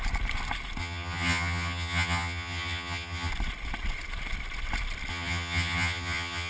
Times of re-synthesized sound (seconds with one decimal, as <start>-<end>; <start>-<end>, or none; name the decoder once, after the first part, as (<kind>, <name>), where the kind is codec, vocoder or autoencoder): 0.8-3.3 (vocoder, HiFi-GAN); 5.1-6.5